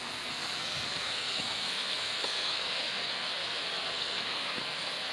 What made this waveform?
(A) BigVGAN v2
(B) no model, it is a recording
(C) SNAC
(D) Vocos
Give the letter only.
C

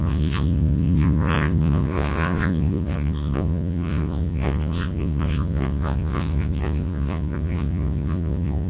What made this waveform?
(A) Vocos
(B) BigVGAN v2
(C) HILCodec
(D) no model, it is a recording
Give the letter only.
A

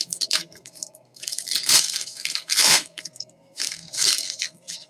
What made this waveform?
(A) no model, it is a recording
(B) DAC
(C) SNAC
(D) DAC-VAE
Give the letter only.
C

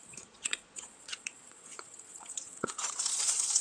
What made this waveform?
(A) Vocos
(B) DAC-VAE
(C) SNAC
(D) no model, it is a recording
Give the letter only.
A